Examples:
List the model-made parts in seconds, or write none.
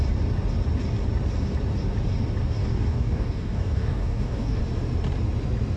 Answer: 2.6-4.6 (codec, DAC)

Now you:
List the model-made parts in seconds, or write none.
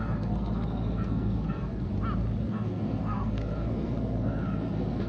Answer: 0.0-1.9 (codec, SNAC); 2.4-5.1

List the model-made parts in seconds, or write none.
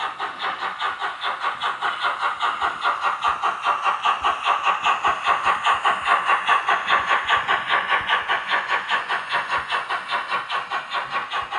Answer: 6.1-9.9 (vocoder, Vocos)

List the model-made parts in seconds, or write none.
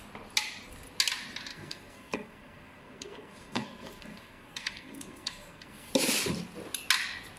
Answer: 1.5-5.9 (codec, SNAC)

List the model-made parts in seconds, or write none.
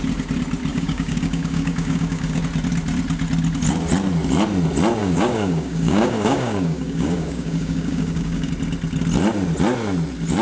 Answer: 0.7-2.4 (codec, DAC); 5.0-8.5